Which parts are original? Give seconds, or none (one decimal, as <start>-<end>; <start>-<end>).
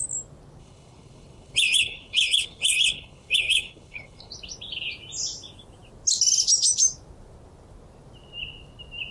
0.0-0.6; 4.3-9.1